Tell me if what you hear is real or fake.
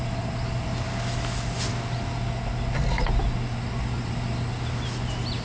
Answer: real